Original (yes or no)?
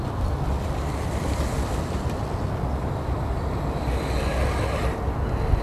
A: yes